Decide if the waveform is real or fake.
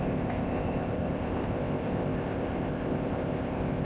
fake